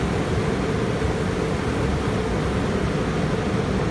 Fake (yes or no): no